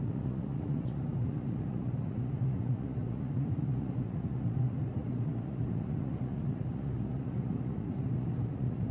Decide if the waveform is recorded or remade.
remade